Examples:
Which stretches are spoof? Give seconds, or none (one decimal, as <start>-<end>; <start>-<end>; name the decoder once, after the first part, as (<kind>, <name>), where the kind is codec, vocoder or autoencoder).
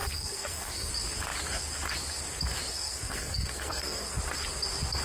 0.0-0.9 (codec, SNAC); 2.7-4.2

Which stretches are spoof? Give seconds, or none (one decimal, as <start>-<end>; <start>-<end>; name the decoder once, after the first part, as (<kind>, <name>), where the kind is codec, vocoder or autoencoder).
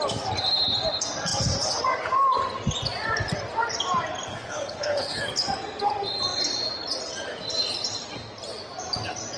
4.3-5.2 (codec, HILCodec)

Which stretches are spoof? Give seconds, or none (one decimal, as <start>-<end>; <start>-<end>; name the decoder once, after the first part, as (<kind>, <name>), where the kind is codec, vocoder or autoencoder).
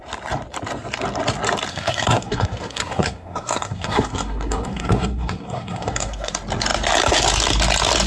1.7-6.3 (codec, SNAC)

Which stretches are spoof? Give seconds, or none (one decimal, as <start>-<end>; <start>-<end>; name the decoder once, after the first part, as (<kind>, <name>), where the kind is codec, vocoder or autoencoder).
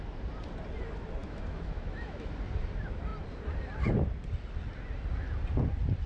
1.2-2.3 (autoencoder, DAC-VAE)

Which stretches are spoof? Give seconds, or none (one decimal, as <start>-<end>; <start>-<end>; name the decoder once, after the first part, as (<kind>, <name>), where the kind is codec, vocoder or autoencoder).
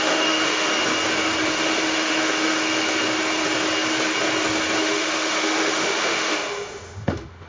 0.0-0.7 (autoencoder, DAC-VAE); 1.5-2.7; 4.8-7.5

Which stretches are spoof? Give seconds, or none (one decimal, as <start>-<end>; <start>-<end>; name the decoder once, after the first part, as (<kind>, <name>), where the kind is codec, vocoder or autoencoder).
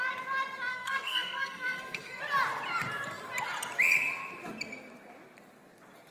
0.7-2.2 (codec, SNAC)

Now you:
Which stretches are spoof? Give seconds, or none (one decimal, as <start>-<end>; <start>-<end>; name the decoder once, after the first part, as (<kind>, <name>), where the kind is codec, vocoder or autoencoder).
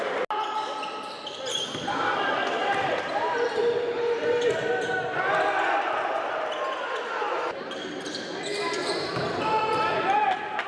2.6-5.3 (vocoder, BigVGAN v2); 8.5-9.6